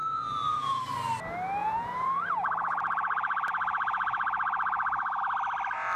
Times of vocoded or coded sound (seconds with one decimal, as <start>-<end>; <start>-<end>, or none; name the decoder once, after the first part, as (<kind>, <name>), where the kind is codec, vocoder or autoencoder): 0.0-0.8 (vocoder, Vocos); 1.6-5.2